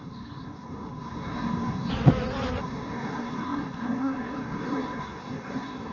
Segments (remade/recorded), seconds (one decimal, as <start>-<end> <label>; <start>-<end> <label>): 0.0-1.9 remade; 1.9-2.6 recorded; 2.6-5.9 remade